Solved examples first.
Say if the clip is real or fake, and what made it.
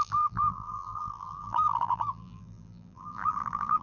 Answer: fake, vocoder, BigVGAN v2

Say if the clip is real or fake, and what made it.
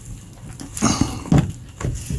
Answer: real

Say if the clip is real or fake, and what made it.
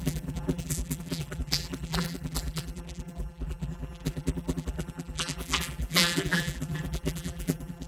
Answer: fake, vocoder, BigVGAN v2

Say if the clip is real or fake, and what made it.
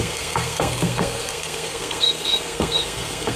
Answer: fake, codec, SNAC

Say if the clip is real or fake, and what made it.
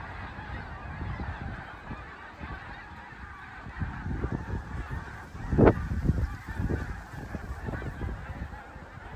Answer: real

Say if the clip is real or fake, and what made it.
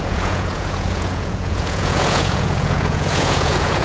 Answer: fake, vocoder, Vocos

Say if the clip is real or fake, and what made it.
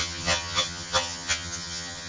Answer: fake, vocoder, HiFi-GAN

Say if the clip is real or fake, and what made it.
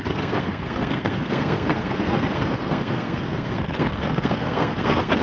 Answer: fake, codec, SNAC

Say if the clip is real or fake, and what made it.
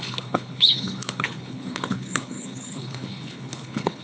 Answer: fake, codec, HILCodec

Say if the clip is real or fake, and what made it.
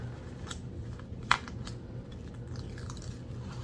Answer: fake, vocoder, BigVGAN v2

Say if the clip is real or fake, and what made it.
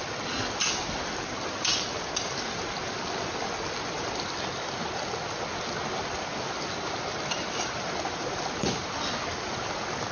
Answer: real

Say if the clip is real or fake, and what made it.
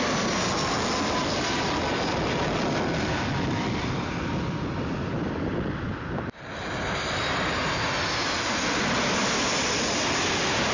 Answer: real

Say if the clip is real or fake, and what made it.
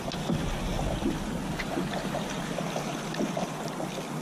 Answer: real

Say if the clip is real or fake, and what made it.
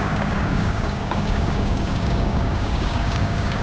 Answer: fake, codec, DAC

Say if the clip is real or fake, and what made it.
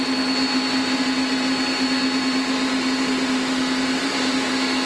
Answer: real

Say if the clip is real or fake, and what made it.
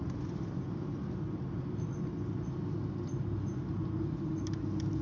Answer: real